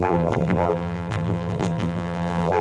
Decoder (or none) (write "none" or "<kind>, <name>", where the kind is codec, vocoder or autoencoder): vocoder, BigVGAN v2